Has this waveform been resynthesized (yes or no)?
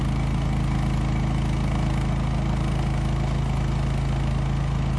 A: no